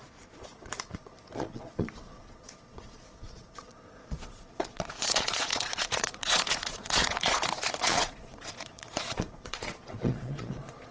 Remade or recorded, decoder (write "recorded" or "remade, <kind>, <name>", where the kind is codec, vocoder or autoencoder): remade, vocoder, Vocos